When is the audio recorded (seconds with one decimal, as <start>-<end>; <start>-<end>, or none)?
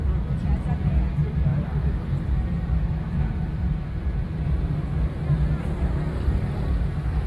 0.0-7.3